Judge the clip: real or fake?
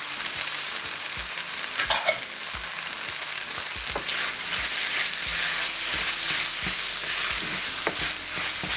real